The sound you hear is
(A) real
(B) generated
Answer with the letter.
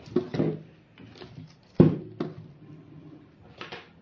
A